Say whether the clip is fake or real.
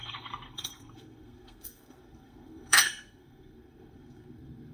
fake